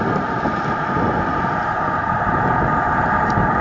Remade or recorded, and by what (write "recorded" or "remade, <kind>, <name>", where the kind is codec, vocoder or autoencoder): recorded